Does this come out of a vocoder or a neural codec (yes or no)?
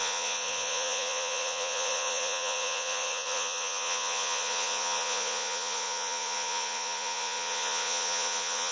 yes